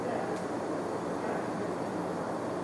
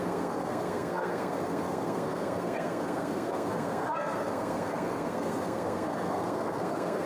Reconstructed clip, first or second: second